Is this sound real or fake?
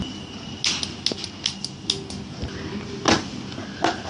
real